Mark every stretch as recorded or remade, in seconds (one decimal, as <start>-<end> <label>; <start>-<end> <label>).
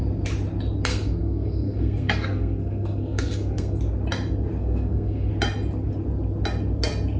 0.0-0.9 recorded; 0.9-3.8 remade; 3.8-4.6 recorded; 4.6-5.3 remade; 5.3-7.2 recorded